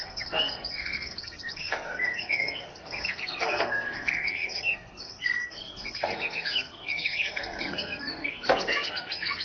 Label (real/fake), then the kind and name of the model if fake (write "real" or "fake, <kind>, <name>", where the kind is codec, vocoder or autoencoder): fake, codec, SNAC